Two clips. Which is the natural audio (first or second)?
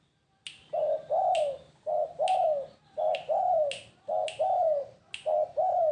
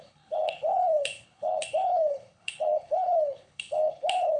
first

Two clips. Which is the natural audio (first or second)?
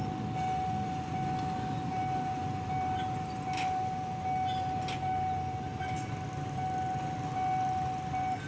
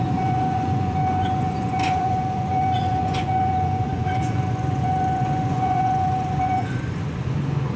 first